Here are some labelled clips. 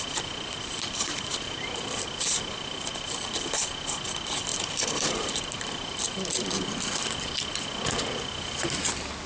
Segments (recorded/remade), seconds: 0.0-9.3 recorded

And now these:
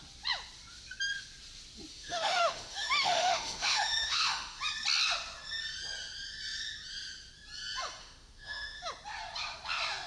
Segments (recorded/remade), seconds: 0.0-1.9 recorded; 1.9-4.6 remade; 4.6-8.0 recorded; 8.0-8.8 remade; 8.8-10.1 recorded

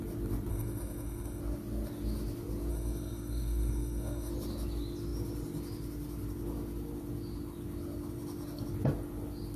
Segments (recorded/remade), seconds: 0.0-0.5 recorded; 0.5-1.4 remade; 1.4-2.7 recorded; 2.7-4.3 remade; 4.3-9.6 recorded

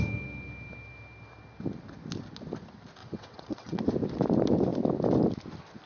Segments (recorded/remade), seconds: 0.0-3.0 recorded; 3.0-3.8 remade; 3.8-5.9 recorded

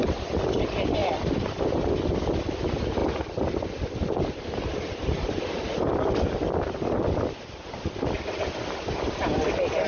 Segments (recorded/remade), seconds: 0.0-1.0 recorded; 1.0-1.6 remade; 1.6-3.0 recorded; 3.0-6.0 remade; 6.0-9.9 recorded

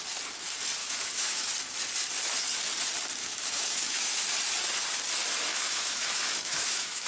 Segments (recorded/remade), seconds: 0.0-0.8 recorded; 0.8-1.5 remade; 1.5-3.2 recorded; 3.2-4.2 remade; 4.2-5.5 recorded; 5.5-7.1 remade

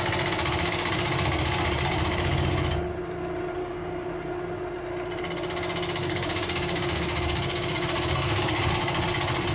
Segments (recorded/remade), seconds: 0.0-3.6 recorded; 3.6-4.1 remade; 4.1-6.0 recorded; 6.0-8.6 remade; 8.6-9.5 recorded